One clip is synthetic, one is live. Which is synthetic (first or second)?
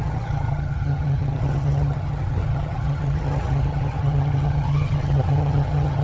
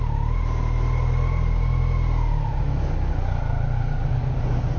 first